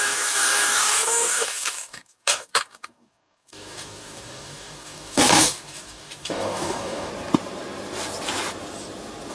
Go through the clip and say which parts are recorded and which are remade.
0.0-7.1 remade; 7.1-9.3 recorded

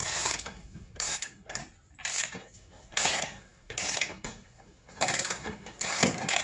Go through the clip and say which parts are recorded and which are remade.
0.0-1.6 remade; 1.6-2.1 recorded; 2.1-6.4 remade

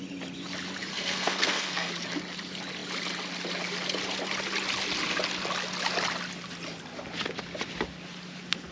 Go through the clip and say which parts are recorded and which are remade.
0.0-0.9 recorded; 0.9-1.9 remade; 1.9-8.7 recorded